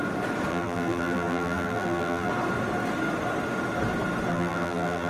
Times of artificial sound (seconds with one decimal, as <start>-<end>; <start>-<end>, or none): 0.5-2.3; 4.3-5.1